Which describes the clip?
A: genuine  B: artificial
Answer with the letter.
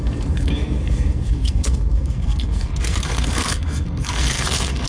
B